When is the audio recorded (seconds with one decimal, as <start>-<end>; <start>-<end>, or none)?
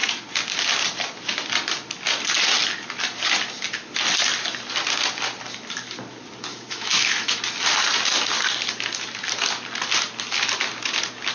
0.0-6.5; 7.4-11.3